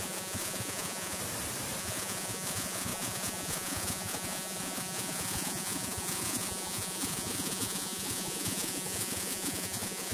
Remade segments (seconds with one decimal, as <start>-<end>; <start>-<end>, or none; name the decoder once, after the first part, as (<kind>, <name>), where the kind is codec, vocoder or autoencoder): 0.0-1.2 (vocoder, Vocos); 1.8-10.1